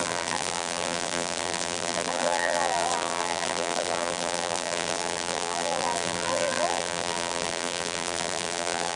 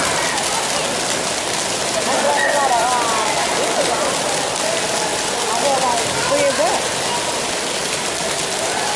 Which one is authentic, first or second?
second